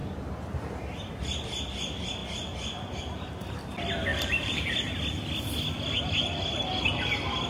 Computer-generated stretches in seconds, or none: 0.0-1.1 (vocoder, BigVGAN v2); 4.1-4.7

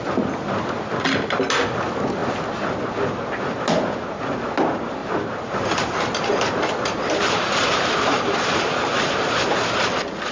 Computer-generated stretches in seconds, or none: 5.0-9.3 (vocoder, BigVGAN v2)

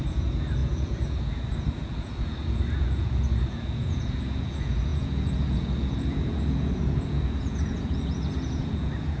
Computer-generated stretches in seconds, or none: 0.0-9.2 (vocoder, Vocos)

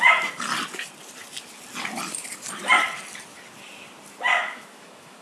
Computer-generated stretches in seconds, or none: 4.3-5.2 (autoencoder, DAC-VAE)

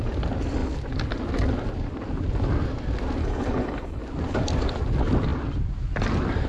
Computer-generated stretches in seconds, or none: 3.2-4.0 (codec, HILCodec)

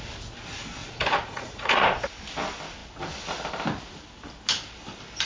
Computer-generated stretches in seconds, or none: 0.8-2.0 (vocoder, Vocos)

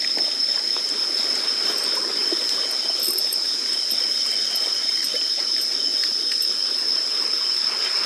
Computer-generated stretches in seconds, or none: none

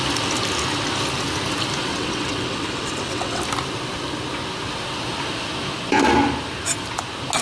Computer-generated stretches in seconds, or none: 1.9-3.4 (vocoder, WaveNeXt)